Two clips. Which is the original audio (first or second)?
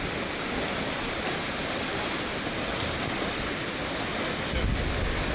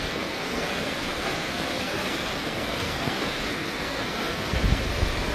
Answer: first